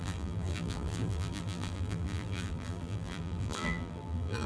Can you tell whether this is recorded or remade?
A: remade